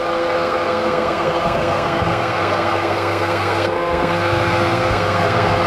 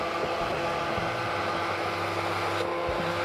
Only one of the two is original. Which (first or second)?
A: second